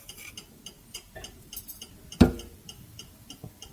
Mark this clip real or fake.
real